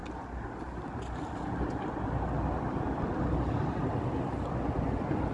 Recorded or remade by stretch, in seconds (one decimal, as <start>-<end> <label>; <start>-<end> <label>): 0.0-5.3 recorded